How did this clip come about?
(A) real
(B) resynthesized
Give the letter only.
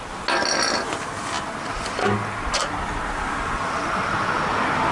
A